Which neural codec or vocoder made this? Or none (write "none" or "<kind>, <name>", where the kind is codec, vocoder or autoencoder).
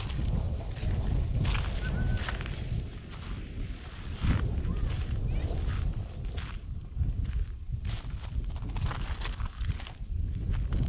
none